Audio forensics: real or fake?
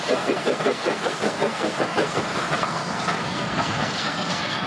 fake